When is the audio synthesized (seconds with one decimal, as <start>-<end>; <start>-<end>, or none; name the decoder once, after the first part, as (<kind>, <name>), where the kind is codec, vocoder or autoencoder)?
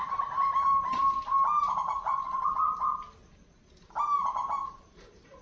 none